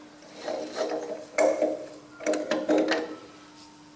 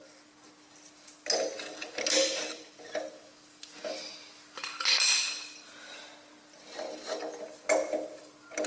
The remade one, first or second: first